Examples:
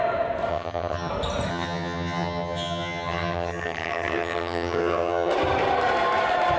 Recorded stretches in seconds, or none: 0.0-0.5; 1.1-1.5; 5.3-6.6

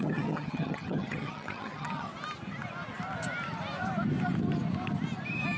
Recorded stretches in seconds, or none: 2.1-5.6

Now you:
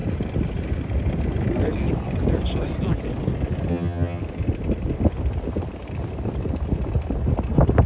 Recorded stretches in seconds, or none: 0.0-3.7; 4.2-7.9